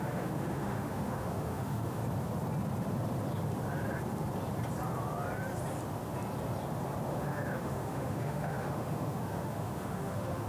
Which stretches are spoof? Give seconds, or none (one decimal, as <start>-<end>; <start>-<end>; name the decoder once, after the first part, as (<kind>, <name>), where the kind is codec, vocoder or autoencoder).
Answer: 0.0-2.0 (autoencoder, DAC-VAE); 7.1-10.5